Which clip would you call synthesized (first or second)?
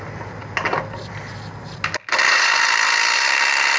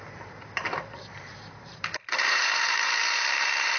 second